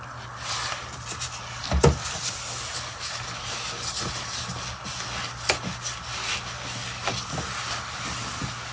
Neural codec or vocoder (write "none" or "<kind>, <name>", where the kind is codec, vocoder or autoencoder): none